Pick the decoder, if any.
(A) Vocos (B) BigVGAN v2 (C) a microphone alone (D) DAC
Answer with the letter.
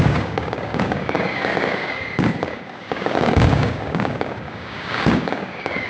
D